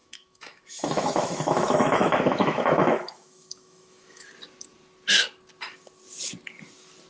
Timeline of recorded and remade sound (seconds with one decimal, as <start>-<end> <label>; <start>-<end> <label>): 0.0-4.3 remade; 4.3-7.1 recorded